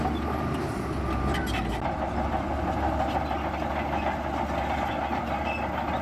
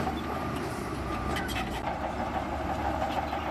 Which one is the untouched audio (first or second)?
first